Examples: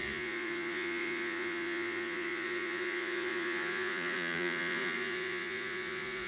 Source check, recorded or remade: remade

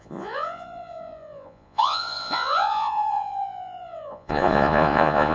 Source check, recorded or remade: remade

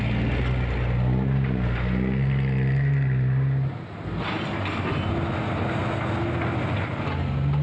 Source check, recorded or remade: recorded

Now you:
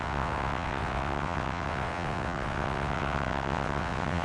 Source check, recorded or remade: remade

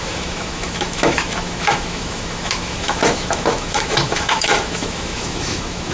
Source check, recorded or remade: remade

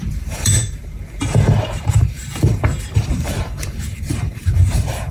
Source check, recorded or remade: remade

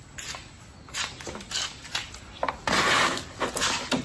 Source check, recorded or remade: recorded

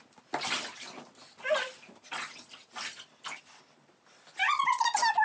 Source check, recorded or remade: recorded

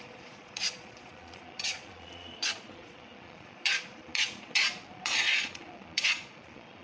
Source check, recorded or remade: remade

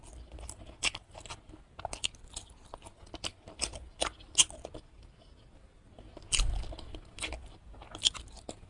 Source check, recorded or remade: recorded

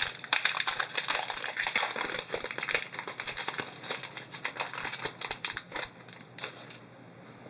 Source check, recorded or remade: remade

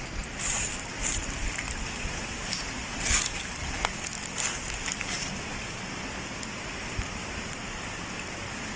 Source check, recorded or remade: recorded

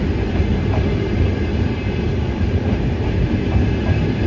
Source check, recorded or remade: recorded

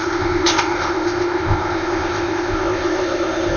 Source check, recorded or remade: remade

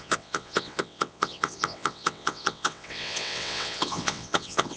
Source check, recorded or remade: remade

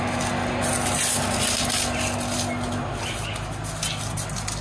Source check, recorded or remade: recorded